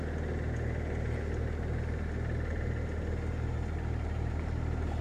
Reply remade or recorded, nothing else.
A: recorded